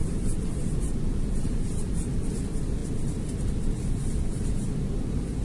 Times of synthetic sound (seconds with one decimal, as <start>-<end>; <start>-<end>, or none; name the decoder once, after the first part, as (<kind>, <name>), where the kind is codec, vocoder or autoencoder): 0.0-5.4 (vocoder, BigVGAN v2)